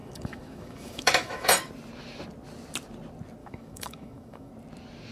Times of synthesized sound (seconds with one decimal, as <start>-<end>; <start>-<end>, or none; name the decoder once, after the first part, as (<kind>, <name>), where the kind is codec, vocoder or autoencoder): 0.0-1.7 (autoencoder, DAC-VAE); 3.4-4.5